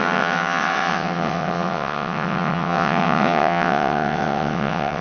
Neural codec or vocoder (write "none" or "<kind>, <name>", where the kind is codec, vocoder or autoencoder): vocoder, WaveNeXt